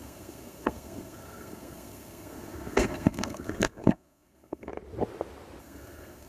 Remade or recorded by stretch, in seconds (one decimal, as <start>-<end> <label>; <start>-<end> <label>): 0.0-4.7 remade; 4.7-5.6 recorded; 5.6-6.3 remade